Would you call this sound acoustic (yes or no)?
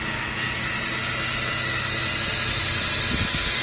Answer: yes